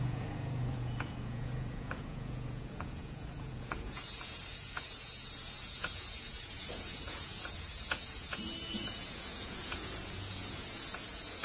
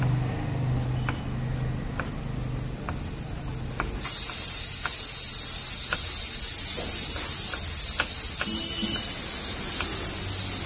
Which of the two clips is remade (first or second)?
first